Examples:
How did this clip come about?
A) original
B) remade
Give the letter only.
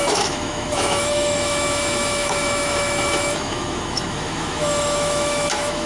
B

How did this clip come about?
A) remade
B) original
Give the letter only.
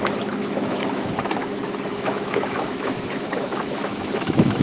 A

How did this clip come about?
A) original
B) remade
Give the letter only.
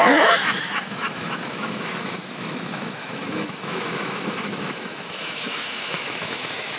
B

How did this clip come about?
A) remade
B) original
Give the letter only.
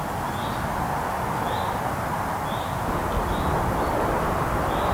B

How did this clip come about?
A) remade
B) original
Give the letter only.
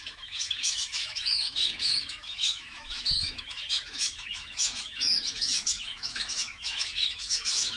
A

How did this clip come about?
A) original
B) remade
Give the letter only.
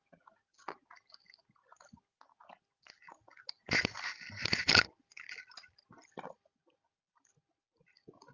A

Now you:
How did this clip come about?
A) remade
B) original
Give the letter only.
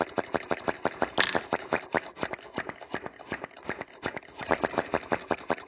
B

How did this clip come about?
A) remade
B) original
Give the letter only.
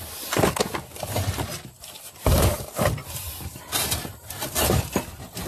B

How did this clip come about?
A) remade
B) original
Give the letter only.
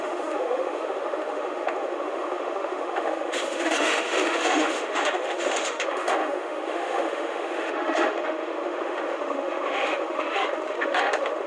A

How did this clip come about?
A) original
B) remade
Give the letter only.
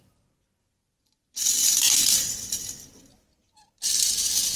A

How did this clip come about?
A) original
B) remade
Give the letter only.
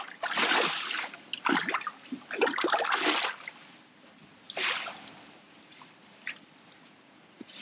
A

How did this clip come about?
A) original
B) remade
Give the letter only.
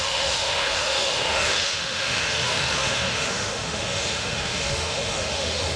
B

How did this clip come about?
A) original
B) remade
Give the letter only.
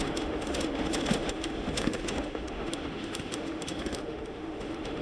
B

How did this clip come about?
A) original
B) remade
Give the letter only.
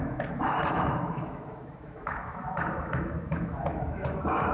B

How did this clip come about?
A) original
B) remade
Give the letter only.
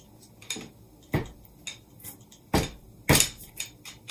A